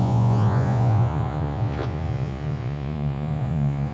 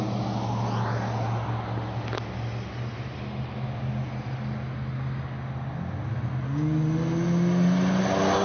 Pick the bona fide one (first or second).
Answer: second